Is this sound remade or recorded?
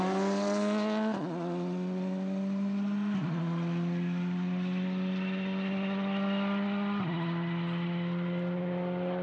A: recorded